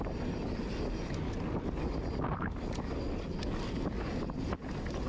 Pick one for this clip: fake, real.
real